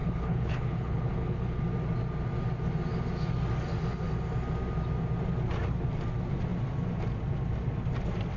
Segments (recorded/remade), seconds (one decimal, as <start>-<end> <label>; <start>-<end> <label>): 0.0-1.6 remade; 1.6-8.4 recorded